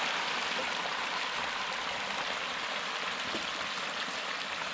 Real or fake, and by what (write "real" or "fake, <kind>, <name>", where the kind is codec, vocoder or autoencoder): real